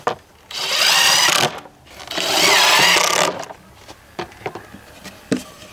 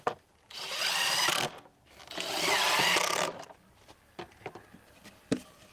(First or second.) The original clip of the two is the first